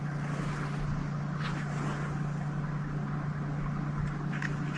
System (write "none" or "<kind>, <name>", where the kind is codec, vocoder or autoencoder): none